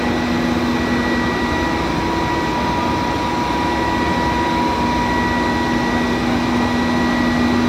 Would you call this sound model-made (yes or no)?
no